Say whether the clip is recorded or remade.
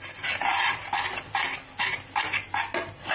recorded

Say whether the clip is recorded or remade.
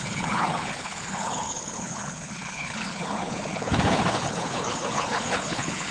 remade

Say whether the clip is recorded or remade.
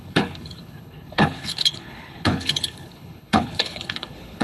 remade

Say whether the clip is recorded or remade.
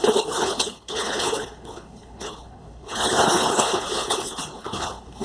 remade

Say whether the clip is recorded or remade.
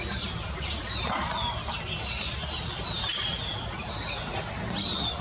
recorded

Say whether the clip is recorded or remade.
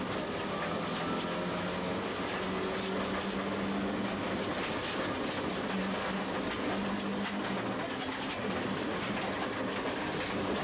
recorded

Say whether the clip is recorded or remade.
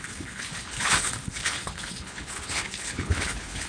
remade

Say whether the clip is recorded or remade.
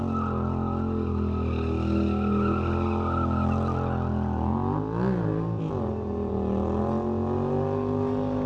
recorded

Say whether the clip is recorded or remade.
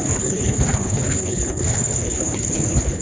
remade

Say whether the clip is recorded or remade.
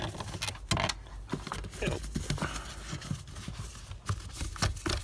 recorded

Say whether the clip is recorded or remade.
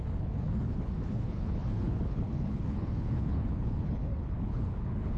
remade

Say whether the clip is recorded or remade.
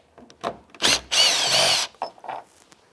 recorded